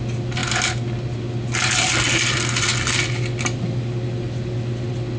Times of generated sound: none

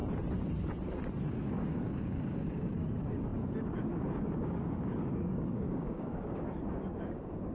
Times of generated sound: 1.3-7.5

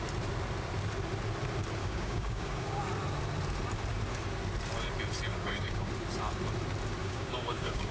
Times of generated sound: 1.8-2.8; 5.3-5.9; 7.0-7.9

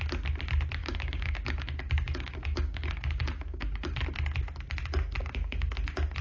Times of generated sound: 0.8-4.0; 5.2-5.7